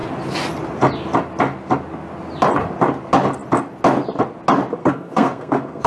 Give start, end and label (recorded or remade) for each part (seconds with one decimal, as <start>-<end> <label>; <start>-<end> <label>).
0.0-4.8 recorded; 4.8-5.9 remade